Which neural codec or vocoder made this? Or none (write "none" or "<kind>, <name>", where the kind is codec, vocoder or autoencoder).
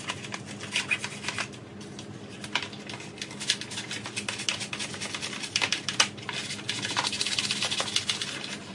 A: none